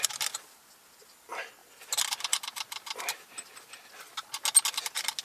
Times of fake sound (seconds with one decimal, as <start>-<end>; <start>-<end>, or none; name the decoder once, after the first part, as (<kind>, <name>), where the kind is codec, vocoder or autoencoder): none